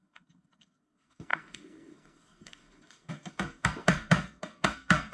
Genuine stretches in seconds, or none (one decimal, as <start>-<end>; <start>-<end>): none